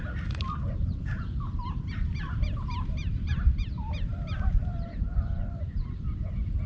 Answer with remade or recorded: recorded